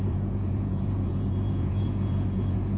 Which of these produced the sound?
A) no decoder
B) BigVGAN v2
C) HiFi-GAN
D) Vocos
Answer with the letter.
D